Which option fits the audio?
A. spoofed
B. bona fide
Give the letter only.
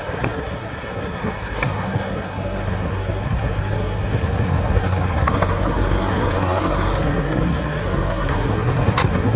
A